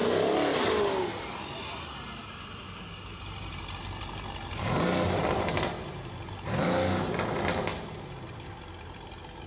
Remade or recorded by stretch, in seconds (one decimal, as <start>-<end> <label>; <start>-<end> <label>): 0.0-9.5 recorded